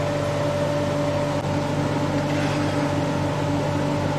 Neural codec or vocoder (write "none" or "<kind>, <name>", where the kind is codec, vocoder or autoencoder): none